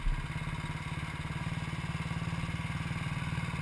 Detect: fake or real real